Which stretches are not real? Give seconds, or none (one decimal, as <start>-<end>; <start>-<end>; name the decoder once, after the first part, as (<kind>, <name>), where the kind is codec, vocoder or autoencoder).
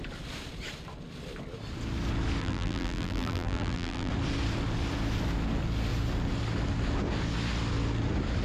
2.4-4.1 (vocoder, BigVGAN v2)